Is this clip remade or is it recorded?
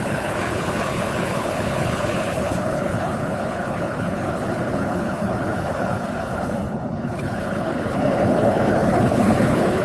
remade